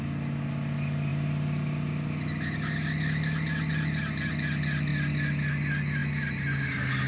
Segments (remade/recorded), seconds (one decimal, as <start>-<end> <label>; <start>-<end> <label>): 0.0-7.1 recorded